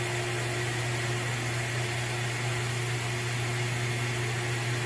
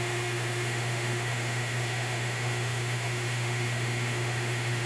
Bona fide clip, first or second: first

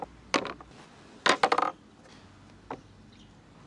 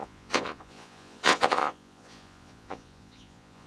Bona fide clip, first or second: first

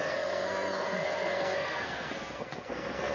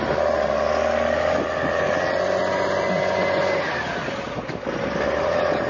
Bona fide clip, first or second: second